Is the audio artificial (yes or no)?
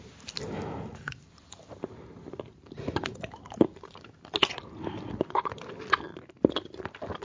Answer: no